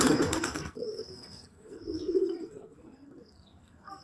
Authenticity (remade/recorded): remade